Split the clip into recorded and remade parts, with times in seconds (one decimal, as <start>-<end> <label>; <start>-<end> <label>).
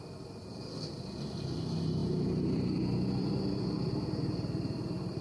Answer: 0.0-2.0 recorded; 2.0-5.2 remade